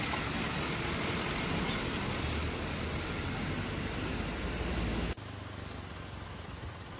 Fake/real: real